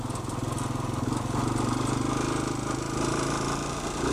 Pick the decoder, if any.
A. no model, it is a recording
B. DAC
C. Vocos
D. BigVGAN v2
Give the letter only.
A